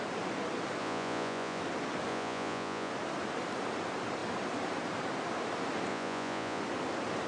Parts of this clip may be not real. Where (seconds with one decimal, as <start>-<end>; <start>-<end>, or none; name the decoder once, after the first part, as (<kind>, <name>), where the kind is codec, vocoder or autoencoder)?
0.8-1.6 (vocoder, Vocos); 2.1-2.9; 5.9-6.6